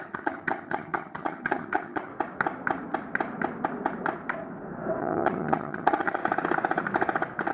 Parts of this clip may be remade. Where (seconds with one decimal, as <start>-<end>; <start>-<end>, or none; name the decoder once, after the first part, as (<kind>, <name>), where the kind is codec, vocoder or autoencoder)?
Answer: 0.0-2.1 (vocoder, HiFi-GAN); 5.0-6.2